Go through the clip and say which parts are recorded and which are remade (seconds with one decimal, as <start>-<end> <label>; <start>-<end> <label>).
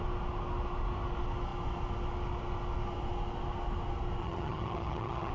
0.0-4.2 recorded; 4.2-5.3 remade